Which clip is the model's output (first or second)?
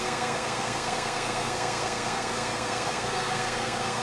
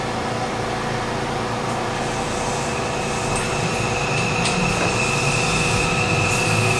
first